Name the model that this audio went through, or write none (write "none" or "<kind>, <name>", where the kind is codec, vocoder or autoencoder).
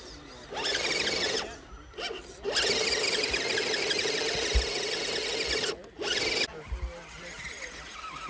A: none